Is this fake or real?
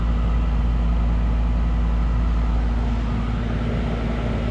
real